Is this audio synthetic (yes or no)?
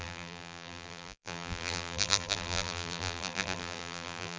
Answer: yes